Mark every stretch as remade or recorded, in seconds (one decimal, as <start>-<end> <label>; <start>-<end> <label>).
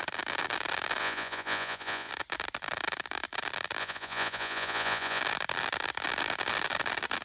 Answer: 0.0-1.0 recorded; 1.0-2.1 remade; 2.1-3.8 recorded; 3.8-5.2 remade; 5.2-7.2 recorded